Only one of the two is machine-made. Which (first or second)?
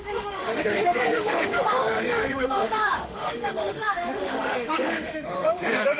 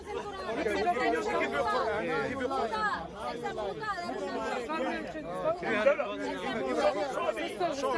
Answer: first